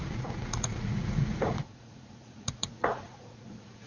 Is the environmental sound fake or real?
fake